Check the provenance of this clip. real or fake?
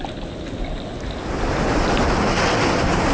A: real